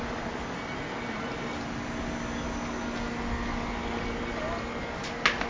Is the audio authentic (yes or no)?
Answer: yes